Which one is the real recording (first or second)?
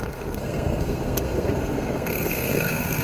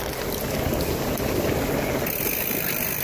second